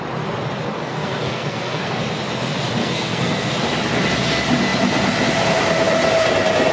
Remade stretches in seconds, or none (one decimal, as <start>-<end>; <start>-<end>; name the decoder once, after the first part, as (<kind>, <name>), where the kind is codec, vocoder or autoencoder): 0.8-2.0 (codec, SNAC); 2.8-3.5